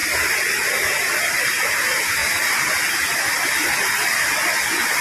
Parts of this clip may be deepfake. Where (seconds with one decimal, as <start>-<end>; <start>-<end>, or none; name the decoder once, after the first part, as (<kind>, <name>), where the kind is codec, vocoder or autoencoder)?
none